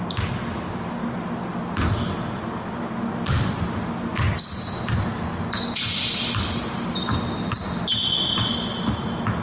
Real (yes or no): yes